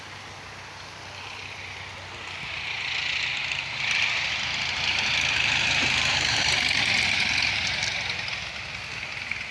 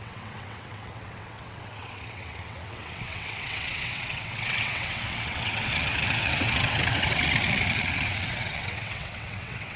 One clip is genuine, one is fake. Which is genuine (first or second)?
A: first